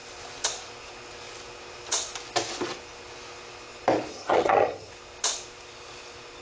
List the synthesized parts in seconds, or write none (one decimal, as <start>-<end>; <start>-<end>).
4.1-4.9